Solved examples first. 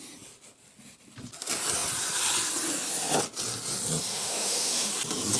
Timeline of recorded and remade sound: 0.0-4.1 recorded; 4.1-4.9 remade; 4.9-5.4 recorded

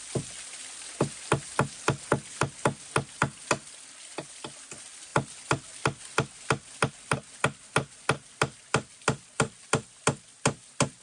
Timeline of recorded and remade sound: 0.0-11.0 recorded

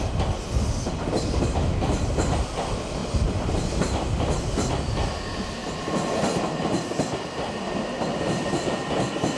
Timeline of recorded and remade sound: 0.0-3.0 recorded; 3.0-3.7 remade; 3.7-9.4 recorded

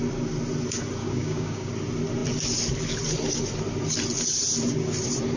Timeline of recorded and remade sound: 0.0-1.0 recorded; 1.0-1.7 remade; 1.7-5.4 recorded

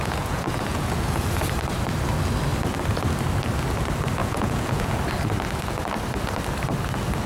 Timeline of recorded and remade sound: 0.0-1.2 remade; 1.2-4.2 recorded; 4.2-5.0 remade; 5.0-7.3 recorded

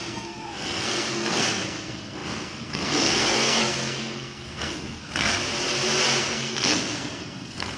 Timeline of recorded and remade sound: 0.0-5.3 remade; 5.3-6.2 recorded; 6.2-7.8 remade

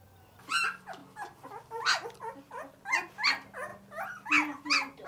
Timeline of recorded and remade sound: 0.0-5.1 recorded